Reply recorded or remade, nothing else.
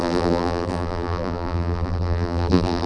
remade